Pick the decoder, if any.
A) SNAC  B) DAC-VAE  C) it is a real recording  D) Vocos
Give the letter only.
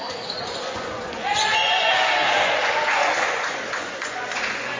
D